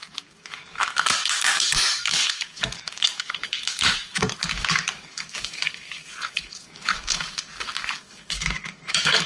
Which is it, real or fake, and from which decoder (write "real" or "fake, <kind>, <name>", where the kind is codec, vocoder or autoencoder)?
fake, codec, DAC